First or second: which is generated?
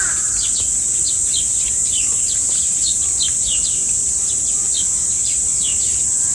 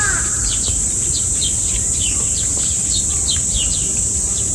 second